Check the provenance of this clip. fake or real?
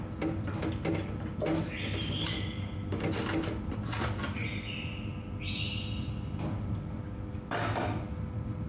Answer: fake